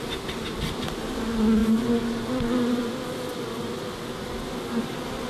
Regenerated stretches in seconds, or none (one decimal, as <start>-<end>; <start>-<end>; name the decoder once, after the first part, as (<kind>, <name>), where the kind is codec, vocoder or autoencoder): none